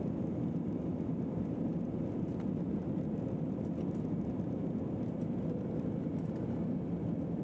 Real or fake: fake